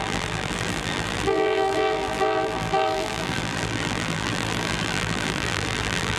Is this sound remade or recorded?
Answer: remade